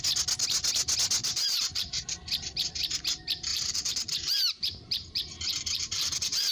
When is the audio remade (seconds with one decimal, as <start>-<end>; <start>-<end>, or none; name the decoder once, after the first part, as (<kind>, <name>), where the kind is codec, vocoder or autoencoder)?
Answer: 1.2-2.1 (vocoder, BigVGAN v2); 3.5-6.5